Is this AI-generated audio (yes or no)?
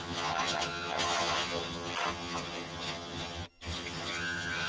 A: yes